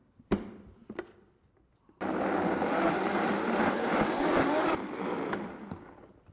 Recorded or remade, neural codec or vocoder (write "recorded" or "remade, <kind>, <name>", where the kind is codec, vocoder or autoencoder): remade, vocoder, BigVGAN v2